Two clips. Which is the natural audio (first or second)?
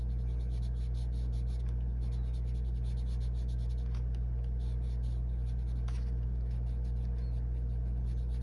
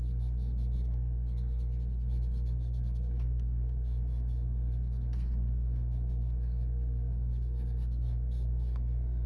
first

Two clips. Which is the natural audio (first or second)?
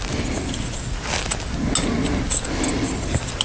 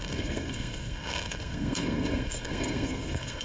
first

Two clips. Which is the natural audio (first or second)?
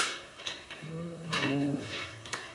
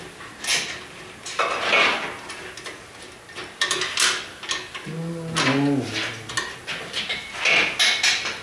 second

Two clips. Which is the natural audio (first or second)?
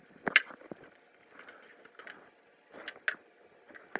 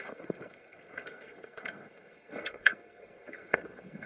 first